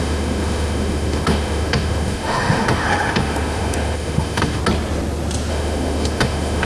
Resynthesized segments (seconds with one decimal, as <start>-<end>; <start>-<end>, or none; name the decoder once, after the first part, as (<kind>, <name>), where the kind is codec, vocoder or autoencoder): 0.0-4.6 (autoencoder, DAC-VAE); 5.5-6.6